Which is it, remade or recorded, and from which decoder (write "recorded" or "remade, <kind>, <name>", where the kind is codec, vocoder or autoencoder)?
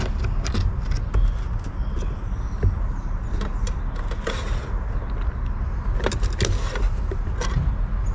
recorded